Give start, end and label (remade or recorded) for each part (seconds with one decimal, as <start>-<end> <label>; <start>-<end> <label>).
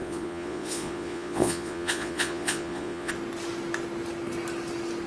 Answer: 0.0-3.1 remade; 3.1-5.1 recorded